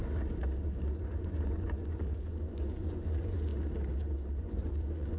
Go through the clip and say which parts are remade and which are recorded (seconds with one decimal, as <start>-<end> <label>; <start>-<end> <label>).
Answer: 0.0-1.0 recorded; 1.0-3.5 remade; 3.5-4.4 recorded; 4.4-5.2 remade